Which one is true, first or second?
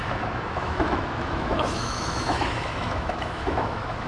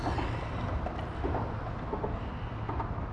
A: second